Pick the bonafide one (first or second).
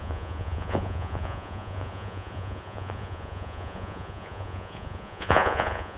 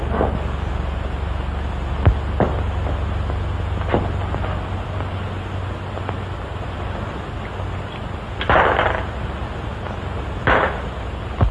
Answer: second